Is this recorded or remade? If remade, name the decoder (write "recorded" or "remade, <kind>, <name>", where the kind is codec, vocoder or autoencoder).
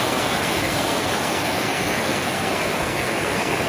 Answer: remade, codec, SNAC